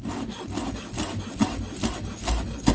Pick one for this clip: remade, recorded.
recorded